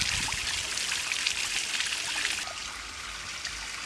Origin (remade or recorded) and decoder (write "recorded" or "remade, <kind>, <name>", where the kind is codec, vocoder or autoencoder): recorded